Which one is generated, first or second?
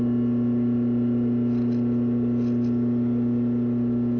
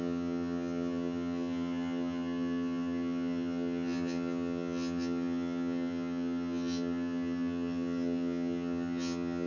second